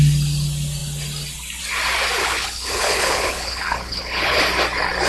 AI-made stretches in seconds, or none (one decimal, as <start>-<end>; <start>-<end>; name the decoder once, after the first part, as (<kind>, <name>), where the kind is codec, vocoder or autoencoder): 2.2-4.4 (codec, HILCodec)